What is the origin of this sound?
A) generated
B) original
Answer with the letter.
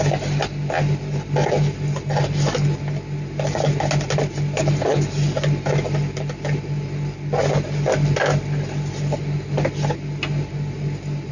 B